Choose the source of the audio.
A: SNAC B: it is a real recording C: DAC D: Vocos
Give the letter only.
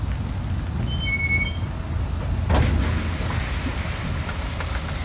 B